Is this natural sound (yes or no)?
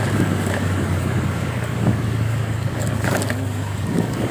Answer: no